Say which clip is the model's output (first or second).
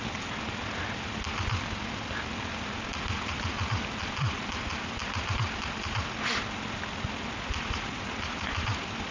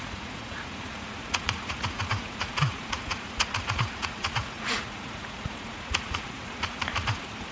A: second